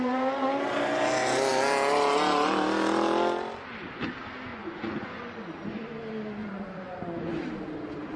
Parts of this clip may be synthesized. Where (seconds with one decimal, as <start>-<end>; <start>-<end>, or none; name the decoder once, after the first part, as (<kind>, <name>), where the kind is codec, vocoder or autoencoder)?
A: 4.5-5.2 (vocoder, Vocos); 6.4-7.4